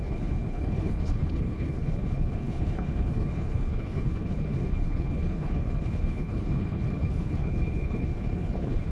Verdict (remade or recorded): remade